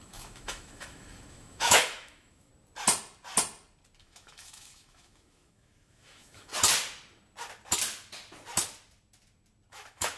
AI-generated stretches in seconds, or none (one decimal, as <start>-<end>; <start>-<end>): 0.0-2.5; 4.0-6.5; 9.7-10.2